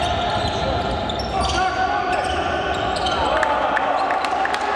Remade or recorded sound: recorded